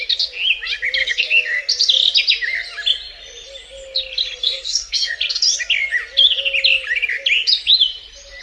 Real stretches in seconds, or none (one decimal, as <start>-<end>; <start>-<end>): 0.0-1.0; 1.7-4.4; 5.1-8.4